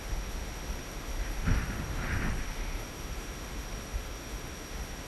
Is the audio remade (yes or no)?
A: yes